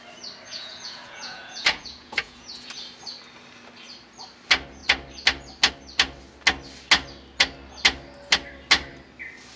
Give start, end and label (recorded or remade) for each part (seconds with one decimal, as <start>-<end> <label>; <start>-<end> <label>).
0.0-0.5 recorded; 0.5-2.7 remade; 2.7-9.6 recorded